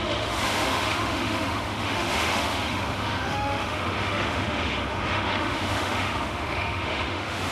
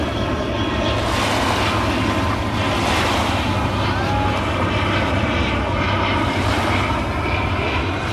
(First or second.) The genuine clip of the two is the second